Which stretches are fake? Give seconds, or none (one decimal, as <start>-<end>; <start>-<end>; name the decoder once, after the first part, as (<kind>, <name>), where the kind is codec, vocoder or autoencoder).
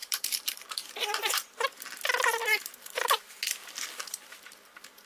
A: 0.0-1.3 (vocoder, BigVGAN v2); 2.4-3.4